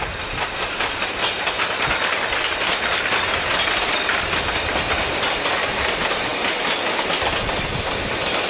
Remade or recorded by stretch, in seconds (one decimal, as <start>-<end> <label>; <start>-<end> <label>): 0.0-8.5 recorded

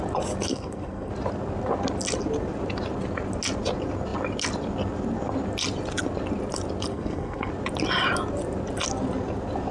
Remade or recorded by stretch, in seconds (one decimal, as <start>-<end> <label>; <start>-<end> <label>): 0.0-0.5 recorded; 0.5-1.1 remade; 1.1-6.9 recorded; 6.9-7.5 remade; 7.5-9.7 recorded

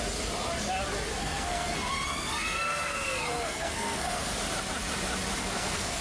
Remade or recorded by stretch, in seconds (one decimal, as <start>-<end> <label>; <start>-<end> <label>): 0.0-1.2 recorded; 1.2-4.3 remade; 4.3-5.4 recorded; 5.4-6.0 remade

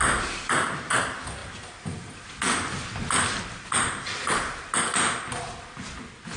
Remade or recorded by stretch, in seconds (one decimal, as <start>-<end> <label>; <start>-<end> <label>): 0.0-6.4 recorded

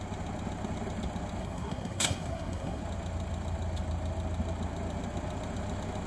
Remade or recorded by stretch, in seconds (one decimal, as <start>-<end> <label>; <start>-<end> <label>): 0.0-1.4 recorded; 1.4-2.8 remade; 2.8-6.1 recorded

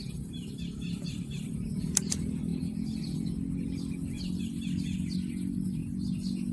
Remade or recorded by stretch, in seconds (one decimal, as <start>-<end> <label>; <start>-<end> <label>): 0.0-6.5 recorded

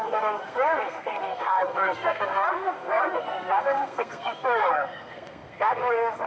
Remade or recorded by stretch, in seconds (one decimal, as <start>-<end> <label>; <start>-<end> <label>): 0.0-6.3 remade

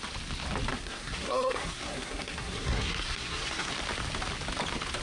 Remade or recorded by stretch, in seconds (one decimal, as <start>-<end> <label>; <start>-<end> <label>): 0.0-0.7 recorded; 0.7-3.7 remade; 3.7-5.0 recorded